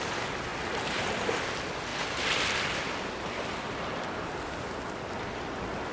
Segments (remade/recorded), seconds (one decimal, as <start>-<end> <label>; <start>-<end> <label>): 0.0-5.9 recorded